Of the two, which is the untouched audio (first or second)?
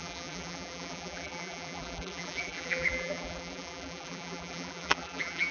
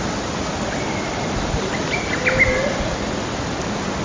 second